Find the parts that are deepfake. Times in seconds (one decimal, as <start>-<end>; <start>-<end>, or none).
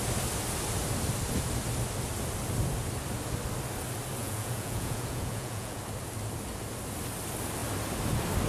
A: 4.2-5.8